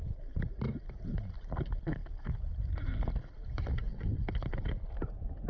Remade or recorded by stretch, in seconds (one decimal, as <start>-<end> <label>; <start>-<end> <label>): 0.0-3.9 recorded; 3.9-4.9 remade; 4.9-5.5 recorded